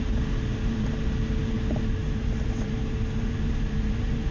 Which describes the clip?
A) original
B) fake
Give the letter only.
A